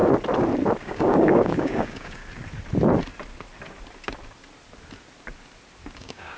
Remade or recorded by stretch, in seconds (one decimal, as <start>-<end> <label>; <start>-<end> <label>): 0.0-0.8 recorded; 0.8-2.2 remade; 2.2-6.0 recorded; 6.0-6.4 remade